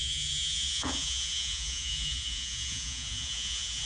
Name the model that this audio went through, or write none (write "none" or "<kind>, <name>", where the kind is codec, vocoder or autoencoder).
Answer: vocoder, Vocos